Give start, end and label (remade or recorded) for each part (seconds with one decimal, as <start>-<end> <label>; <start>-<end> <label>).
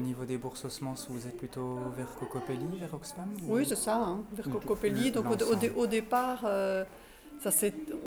0.0-2.1 recorded; 2.1-3.7 remade; 3.7-7.4 recorded; 7.4-8.1 remade